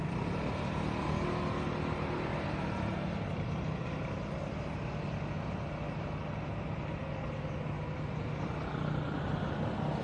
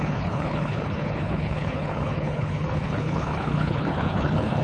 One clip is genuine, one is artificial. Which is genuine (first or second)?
first